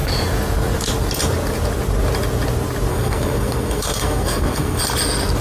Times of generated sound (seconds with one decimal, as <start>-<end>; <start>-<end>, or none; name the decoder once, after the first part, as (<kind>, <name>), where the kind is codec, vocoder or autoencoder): 2.9-4.8 (codec, SNAC)